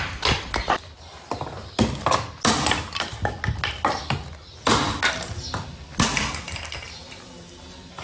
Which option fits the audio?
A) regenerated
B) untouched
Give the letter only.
B